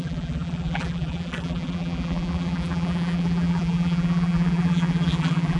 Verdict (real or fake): fake